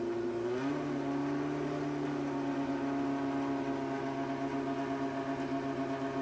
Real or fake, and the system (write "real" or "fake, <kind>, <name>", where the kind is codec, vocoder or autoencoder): real